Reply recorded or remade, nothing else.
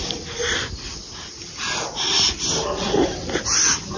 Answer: recorded